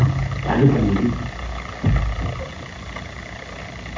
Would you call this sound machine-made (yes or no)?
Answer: no